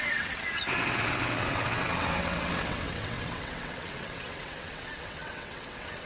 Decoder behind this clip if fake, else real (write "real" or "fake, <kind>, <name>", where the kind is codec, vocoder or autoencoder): fake, vocoder, WaveNeXt